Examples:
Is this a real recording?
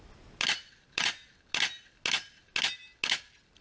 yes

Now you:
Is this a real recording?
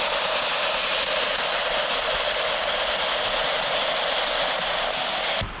yes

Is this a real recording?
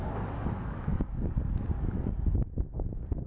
no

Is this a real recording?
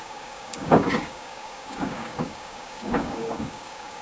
no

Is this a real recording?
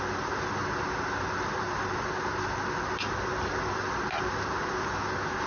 yes